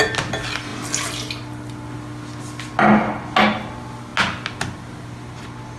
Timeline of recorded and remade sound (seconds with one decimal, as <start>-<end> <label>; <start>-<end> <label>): 0.0-5.8 recorded